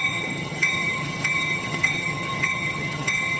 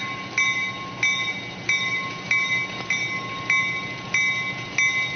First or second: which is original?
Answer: second